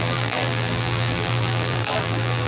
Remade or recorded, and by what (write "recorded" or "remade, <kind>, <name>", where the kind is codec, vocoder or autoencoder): remade, vocoder, BigVGAN v2